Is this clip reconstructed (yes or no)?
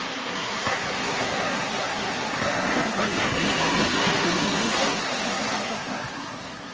yes